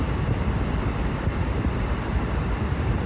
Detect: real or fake fake